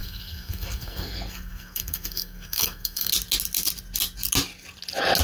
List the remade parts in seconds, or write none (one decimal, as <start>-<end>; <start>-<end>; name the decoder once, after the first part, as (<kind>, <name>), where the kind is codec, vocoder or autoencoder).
0.0-3.1 (codec, SNAC)